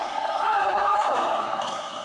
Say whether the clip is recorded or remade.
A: remade